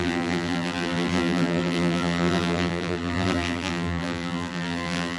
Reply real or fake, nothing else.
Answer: fake